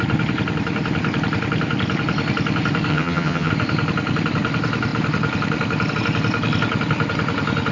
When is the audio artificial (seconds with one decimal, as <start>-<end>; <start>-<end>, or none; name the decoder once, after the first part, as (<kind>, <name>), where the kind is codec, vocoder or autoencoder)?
2.9-3.5 (vocoder, HiFi-GAN)